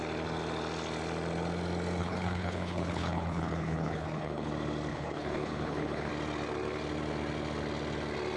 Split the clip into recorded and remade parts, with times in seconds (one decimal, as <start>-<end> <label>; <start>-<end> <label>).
0.0-2.0 recorded; 2.0-4.5 remade; 4.5-4.9 recorded; 4.9-6.1 remade; 6.1-8.4 recorded